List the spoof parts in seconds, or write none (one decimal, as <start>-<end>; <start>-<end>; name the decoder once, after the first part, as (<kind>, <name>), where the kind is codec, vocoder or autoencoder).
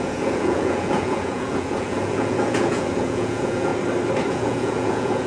0.0-3.7 (vocoder, Vocos); 4.3-5.3